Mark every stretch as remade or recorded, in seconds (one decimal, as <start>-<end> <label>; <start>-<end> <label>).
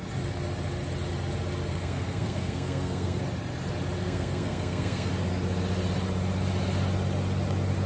0.0-1.7 recorded; 1.7-3.2 remade; 3.2-4.0 recorded; 4.0-5.1 remade; 5.1-7.9 recorded